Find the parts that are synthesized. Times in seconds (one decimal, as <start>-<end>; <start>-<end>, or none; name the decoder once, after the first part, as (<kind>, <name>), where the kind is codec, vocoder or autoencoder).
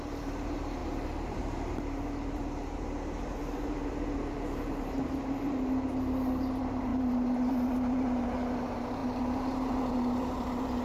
0.0-10.8 (vocoder, BigVGAN v2)